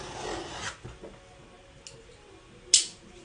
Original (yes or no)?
yes